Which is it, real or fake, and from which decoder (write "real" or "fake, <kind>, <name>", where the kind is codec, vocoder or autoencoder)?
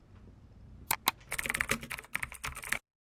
real